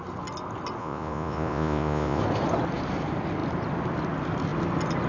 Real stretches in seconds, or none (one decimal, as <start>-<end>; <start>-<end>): 0.0-0.8; 2.2-5.1

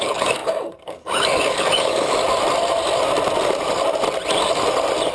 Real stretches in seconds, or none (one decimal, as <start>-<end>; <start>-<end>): 2.2-5.1

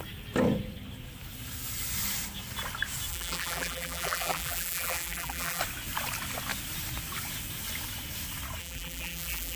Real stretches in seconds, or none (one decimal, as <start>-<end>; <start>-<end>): 0.0-3.1; 5.6-8.6

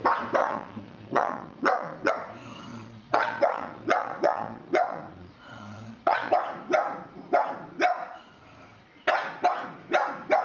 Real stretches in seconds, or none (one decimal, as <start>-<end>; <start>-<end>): 0.0-0.4; 2.1-2.7; 6.3-10.4

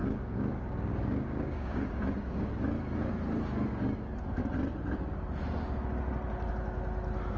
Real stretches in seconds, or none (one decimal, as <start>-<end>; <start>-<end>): 2.5-7.4